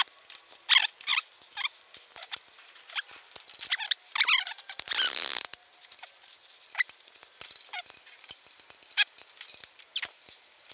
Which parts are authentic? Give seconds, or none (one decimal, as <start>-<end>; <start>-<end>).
0.0-10.7